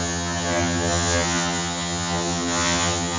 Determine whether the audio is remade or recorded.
remade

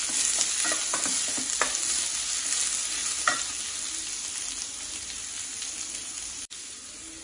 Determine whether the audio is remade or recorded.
recorded